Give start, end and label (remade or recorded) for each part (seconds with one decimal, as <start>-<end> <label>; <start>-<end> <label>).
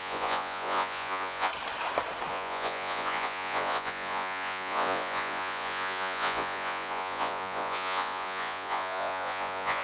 0.0-1.5 remade; 1.5-2.3 recorded; 2.3-9.8 remade